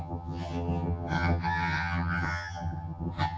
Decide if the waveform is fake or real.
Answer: fake